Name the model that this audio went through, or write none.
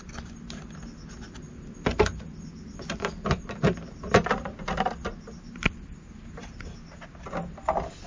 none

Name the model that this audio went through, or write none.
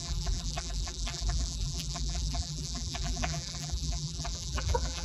vocoder, BigVGAN v2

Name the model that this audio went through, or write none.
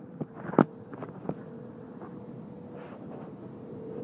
none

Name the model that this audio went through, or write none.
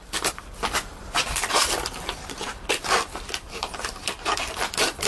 vocoder, BigVGAN v2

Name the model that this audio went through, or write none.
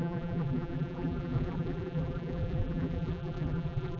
vocoder, BigVGAN v2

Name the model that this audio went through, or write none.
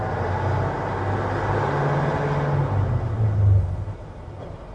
none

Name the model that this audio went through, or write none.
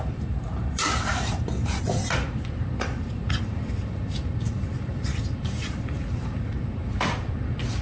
vocoder, BigVGAN v2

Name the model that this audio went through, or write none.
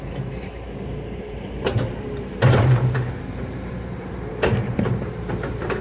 vocoder, BigVGAN v2